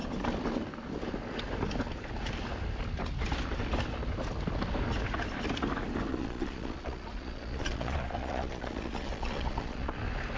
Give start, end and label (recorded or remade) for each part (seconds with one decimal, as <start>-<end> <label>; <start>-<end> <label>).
0.0-6.1 recorded; 6.1-10.0 remade; 10.0-10.4 recorded